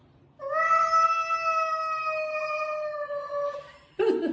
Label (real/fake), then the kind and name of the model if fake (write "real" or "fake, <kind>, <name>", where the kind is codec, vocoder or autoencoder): real